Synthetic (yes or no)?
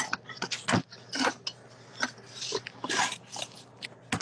no